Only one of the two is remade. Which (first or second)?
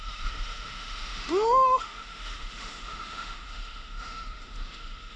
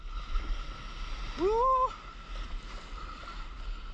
first